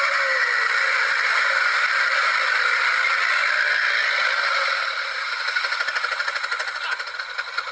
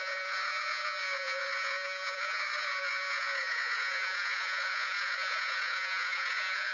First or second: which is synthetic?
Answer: second